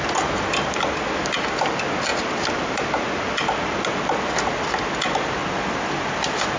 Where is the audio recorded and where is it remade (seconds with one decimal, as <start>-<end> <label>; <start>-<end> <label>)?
0.0-6.6 recorded

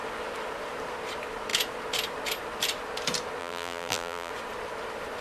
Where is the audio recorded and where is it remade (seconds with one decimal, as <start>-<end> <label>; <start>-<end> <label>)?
0.0-3.4 recorded; 3.4-4.3 remade; 4.3-5.2 recorded

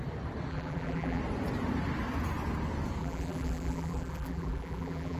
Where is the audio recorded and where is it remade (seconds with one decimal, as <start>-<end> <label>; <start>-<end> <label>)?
0.0-0.5 recorded; 0.5-1.2 remade; 1.2-3.0 recorded; 3.0-5.2 remade

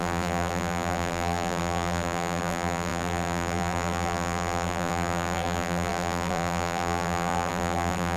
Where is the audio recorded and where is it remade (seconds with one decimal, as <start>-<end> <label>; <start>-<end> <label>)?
0.0-8.2 remade

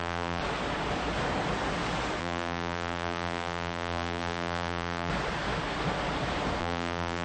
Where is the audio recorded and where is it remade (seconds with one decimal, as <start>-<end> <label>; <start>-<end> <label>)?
0.0-0.4 remade; 0.4-2.2 recorded; 2.2-5.1 remade; 5.1-6.6 recorded; 6.6-7.2 remade

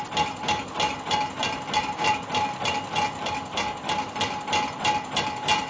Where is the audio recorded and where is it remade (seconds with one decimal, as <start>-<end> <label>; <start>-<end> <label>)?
0.0-5.7 recorded